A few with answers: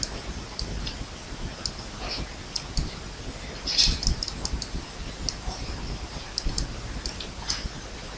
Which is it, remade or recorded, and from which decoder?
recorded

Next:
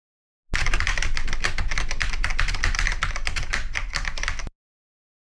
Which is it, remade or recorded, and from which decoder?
recorded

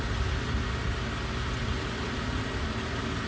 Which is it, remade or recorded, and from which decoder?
recorded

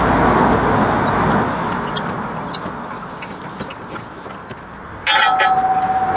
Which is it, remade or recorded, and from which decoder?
recorded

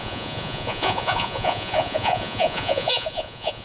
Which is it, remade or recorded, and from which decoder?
remade, vocoder, Vocos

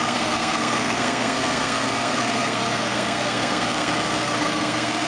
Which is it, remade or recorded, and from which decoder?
remade, codec, SNAC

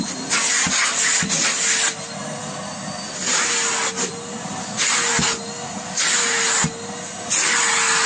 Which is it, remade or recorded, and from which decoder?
recorded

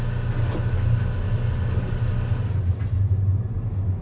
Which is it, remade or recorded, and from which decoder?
recorded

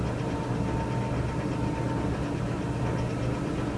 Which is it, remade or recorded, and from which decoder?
recorded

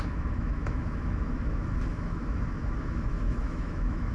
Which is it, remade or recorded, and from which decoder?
remade, autoencoder, DAC-VAE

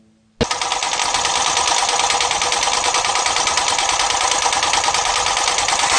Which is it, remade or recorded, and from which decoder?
recorded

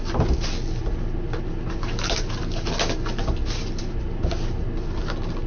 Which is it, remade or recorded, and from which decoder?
recorded